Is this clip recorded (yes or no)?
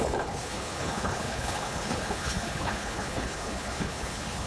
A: no